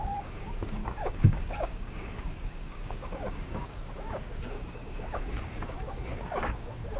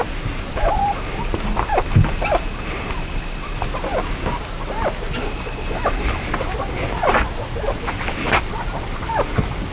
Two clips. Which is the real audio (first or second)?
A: second